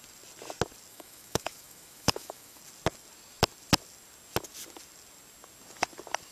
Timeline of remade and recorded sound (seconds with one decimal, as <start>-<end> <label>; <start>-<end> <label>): 0.0-0.9 recorded; 0.9-2.6 remade; 2.6-6.3 recorded